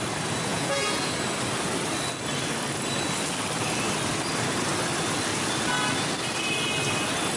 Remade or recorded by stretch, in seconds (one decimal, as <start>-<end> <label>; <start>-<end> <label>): 0.0-0.5 recorded; 0.5-1.1 remade; 1.1-7.4 recorded